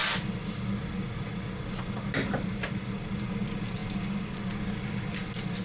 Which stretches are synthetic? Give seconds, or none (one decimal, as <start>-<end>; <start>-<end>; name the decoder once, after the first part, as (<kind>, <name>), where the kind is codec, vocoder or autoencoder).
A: none